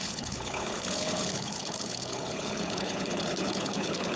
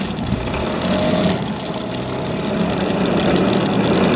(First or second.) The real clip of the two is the second